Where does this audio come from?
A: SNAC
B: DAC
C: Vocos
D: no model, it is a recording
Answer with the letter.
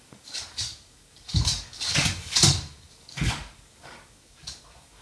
B